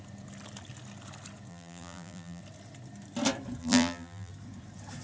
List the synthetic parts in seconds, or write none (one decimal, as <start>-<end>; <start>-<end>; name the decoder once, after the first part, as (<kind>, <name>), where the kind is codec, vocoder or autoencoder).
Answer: 1.5-2.4 (vocoder, BigVGAN v2); 3.6-4.3